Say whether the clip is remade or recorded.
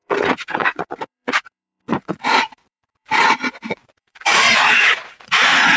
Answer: remade